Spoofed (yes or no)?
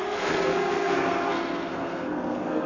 yes